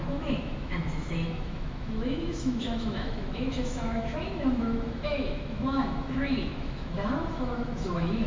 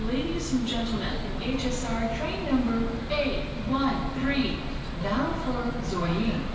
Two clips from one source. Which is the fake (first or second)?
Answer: first